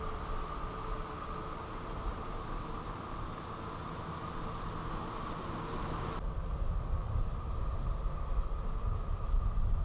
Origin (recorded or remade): recorded